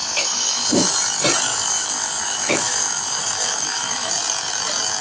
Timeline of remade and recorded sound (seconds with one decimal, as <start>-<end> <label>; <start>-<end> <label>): 0.0-0.9 remade; 0.9-1.5 recorded; 1.5-4.1 remade; 4.1-5.0 recorded